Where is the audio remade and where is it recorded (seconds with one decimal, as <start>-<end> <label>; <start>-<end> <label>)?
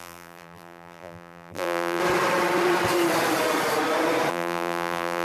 0.0-2.0 remade; 2.0-4.3 recorded; 4.3-5.2 remade